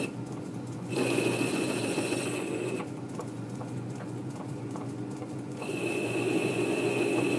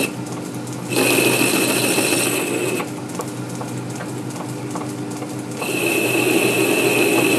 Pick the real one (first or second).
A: second